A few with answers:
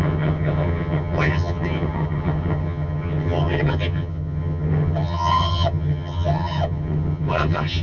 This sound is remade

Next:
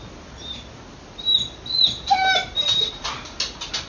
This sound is recorded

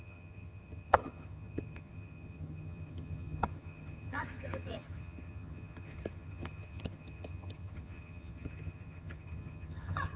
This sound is remade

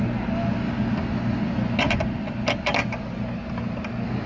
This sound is recorded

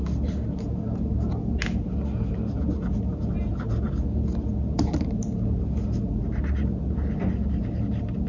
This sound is recorded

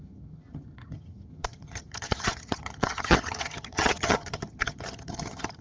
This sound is remade